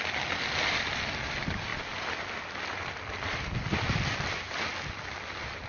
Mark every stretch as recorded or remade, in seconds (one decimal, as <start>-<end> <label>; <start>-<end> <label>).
0.0-5.7 recorded